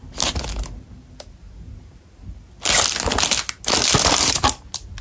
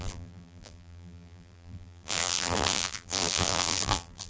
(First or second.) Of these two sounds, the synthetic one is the second